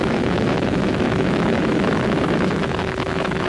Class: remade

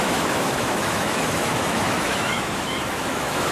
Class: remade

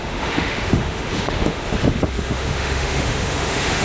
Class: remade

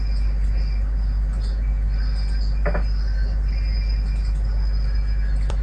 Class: recorded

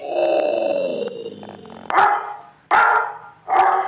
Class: recorded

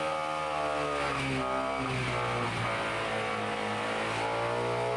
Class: recorded